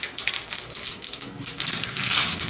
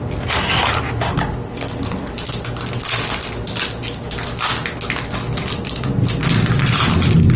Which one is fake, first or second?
first